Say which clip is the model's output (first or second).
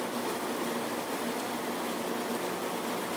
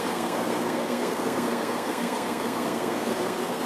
second